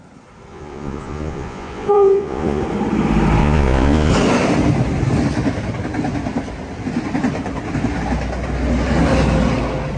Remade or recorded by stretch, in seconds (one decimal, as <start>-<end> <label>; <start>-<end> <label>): 0.0-0.5 recorded; 0.5-2.6 remade; 2.6-3.4 recorded; 3.4-4.1 remade; 4.1-10.0 recorded